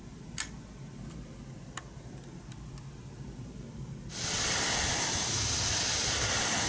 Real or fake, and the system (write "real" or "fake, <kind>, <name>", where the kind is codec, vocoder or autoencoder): real